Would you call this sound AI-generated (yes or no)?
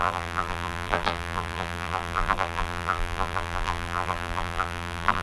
yes